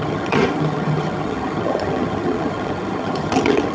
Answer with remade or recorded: remade